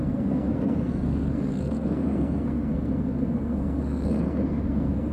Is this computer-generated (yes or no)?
yes